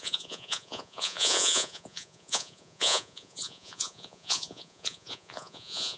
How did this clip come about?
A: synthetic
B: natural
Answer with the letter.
A